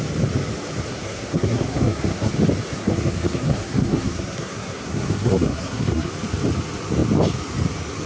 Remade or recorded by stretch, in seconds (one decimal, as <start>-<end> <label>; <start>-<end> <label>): 0.0-0.9 recorded; 0.9-2.3 remade; 2.3-2.7 recorded; 2.7-6.1 remade; 6.1-8.1 recorded